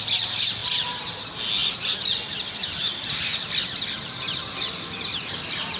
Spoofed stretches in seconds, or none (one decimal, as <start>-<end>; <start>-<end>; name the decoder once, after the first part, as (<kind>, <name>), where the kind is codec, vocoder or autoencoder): 0.6-1.2 (vocoder, BigVGAN v2)